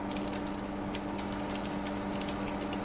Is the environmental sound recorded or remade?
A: recorded